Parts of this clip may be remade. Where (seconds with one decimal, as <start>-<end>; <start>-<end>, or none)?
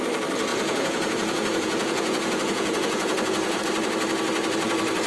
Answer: 0.5-3.6